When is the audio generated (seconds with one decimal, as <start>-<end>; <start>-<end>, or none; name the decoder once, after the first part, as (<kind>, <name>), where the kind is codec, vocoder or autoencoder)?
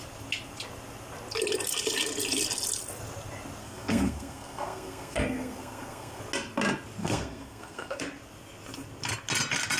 3.6-6.2 (codec, SNAC); 7.0-8.0